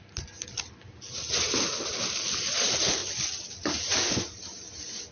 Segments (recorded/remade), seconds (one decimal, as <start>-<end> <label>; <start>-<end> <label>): 0.0-5.1 recorded